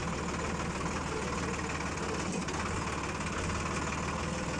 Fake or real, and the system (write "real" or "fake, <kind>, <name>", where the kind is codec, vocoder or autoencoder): real